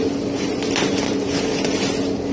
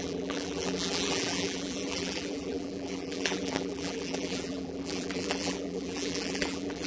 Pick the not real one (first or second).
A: second